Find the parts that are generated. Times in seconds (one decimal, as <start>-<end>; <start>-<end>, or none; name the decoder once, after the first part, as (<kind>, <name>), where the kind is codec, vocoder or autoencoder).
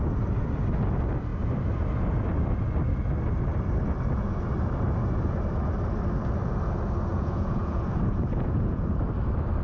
7.1-8.9 (vocoder, Vocos)